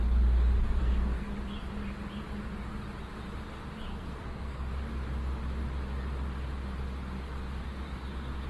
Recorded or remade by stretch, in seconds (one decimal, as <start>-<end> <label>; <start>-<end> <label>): 0.0-0.8 recorded; 0.8-1.3 remade; 1.3-3.9 recorded; 3.9-4.7 remade; 4.7-8.5 recorded